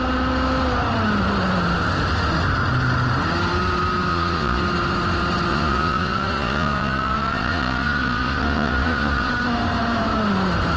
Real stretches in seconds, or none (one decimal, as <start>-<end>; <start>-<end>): 0.0-4.1; 4.6-5.5; 9.3-10.8